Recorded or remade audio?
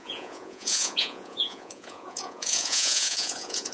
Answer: remade